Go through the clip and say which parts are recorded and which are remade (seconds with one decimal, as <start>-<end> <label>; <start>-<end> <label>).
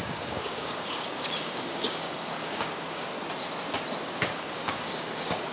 0.0-3.1 remade; 3.1-4.1 recorded; 4.1-5.5 remade